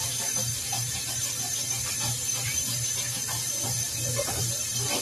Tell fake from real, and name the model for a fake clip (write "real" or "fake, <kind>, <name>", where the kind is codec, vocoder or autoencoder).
real